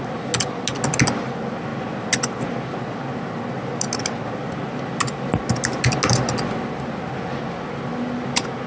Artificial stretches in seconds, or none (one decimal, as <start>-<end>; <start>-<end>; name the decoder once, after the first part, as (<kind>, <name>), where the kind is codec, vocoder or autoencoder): none